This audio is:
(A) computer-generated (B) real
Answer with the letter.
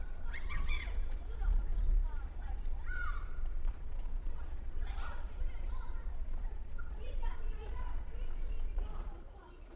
A